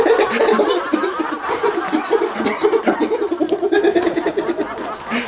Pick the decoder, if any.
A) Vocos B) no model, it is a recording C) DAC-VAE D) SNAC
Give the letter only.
B